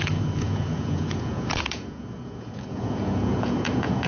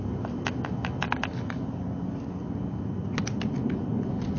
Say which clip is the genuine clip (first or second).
second